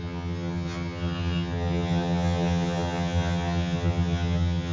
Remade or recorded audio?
remade